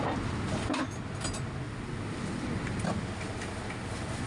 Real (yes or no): yes